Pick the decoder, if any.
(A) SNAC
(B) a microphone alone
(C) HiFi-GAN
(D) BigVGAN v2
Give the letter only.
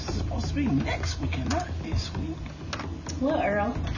B